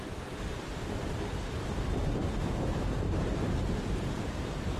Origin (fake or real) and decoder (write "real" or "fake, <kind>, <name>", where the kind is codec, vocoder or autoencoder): fake, vocoder, BigVGAN v2